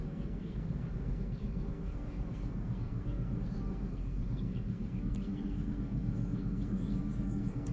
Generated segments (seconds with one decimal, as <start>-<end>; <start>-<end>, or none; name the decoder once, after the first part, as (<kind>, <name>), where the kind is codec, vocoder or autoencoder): 0.0-7.7 (codec, SNAC)